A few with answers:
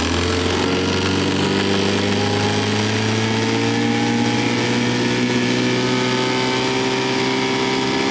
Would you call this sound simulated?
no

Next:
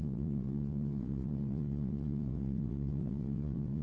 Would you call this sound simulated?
yes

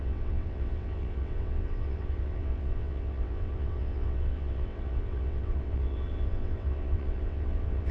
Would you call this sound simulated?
yes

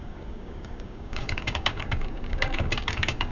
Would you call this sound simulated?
yes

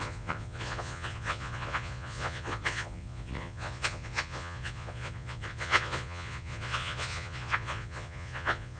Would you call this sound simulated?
yes